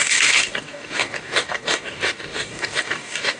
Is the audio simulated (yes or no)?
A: yes